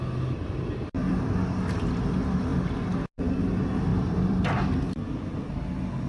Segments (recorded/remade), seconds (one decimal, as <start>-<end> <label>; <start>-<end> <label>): 0.0-1.0 recorded; 1.0-2.0 remade; 2.0-3.9 recorded; 3.9-5.4 remade; 5.4-6.1 recorded